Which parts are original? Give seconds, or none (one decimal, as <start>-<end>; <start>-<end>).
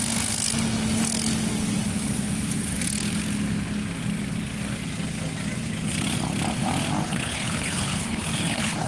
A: 0.0-7.1